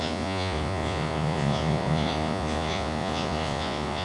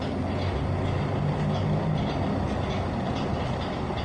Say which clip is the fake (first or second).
first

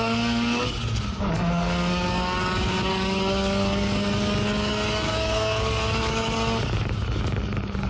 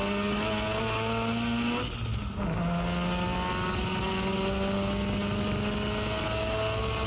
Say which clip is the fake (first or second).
first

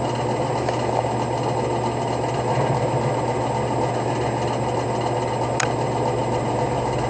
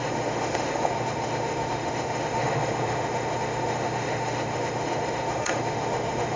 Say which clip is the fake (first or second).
second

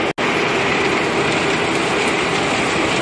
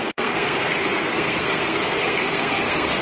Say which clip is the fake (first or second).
second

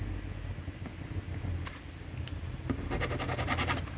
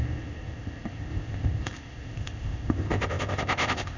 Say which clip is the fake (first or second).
second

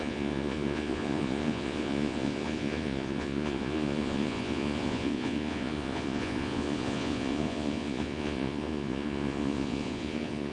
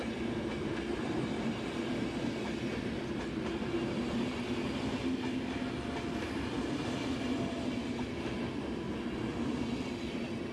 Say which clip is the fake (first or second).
first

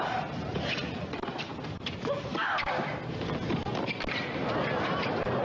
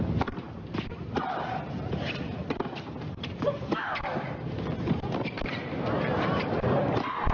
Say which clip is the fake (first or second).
second